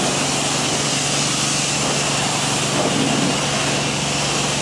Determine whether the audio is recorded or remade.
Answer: recorded